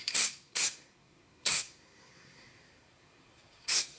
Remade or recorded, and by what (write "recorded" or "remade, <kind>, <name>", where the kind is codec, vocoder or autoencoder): remade, codec, SNAC